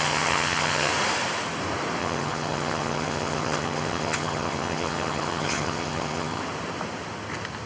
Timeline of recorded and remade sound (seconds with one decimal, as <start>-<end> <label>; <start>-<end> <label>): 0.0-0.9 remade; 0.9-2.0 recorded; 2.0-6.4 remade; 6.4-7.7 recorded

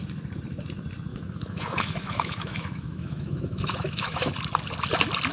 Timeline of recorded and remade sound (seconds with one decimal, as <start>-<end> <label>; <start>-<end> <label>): 0.0-1.1 recorded; 1.1-4.3 remade; 4.3-5.3 recorded

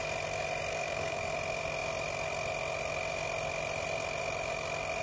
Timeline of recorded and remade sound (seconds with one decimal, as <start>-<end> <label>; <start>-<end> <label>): 0.0-0.7 recorded; 0.7-1.3 remade; 1.3-5.0 recorded